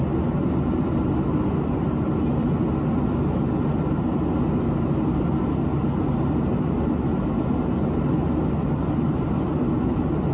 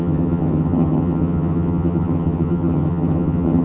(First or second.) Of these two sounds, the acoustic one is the first